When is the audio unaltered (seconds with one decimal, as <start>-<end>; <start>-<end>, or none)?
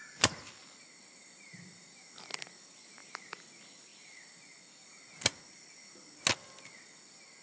0.0-3.0; 3.5-7.4